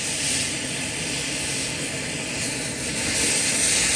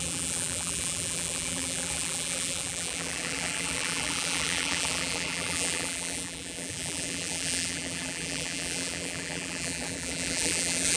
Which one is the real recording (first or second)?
first